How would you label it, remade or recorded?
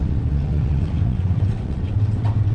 remade